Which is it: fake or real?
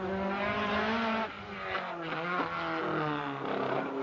real